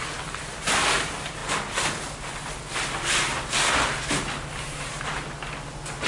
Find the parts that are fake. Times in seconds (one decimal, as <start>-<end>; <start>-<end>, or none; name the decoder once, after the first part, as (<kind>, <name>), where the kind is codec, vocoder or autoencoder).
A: none